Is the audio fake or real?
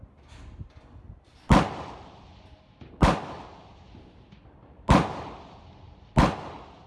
real